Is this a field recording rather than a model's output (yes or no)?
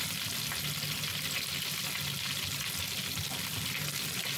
yes